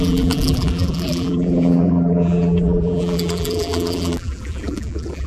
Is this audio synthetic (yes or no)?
yes